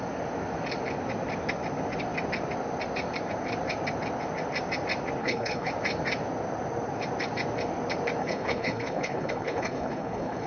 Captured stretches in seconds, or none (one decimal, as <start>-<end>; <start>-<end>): 0.0-5.2; 5.7-8.2